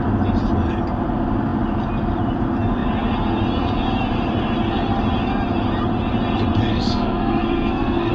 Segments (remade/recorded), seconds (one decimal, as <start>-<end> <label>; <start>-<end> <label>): 0.0-6.7 recorded; 6.7-8.1 remade